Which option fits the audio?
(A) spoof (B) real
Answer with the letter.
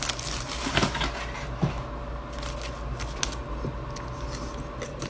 B